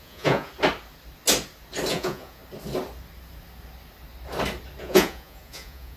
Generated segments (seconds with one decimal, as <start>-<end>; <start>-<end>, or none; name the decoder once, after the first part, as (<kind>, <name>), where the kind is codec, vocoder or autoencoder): 0.0-0.5 (vocoder, Vocos); 1.9-2.4; 4.8-6.0

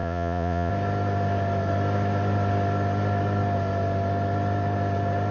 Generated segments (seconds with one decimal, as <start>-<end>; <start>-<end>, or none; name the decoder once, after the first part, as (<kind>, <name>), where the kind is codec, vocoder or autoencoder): 0.0-0.7 (vocoder, Vocos)

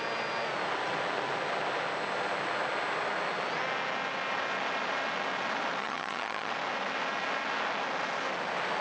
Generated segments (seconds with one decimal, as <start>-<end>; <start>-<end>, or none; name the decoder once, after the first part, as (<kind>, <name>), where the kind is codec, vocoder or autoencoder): 5.8-6.5 (vocoder, HiFi-GAN)

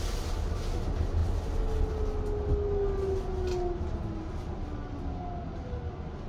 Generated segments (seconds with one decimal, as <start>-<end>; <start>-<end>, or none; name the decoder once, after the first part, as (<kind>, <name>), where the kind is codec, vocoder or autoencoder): none

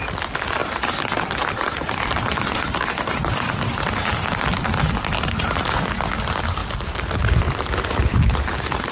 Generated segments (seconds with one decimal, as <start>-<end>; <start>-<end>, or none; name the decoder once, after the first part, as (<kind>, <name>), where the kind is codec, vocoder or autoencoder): 0.6-4.0 (vocoder, BigVGAN v2); 6.6-8.9

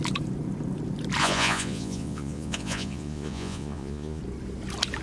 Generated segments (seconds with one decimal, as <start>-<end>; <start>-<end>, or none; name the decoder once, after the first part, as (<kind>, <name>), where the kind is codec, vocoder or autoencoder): 1.2-4.2 (vocoder, Vocos)

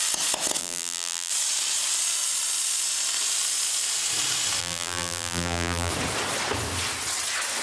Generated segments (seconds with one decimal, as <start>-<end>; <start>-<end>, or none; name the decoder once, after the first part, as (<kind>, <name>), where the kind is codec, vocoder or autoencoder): 0.6-1.3 (vocoder, BigVGAN v2); 4.6-5.9

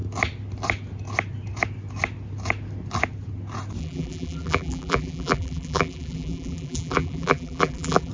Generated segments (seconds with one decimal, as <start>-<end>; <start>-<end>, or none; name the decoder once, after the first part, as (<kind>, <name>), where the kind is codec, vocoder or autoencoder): 3.8-8.1 (vocoder, BigVGAN v2)